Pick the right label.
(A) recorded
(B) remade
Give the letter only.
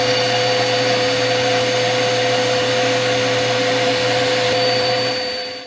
B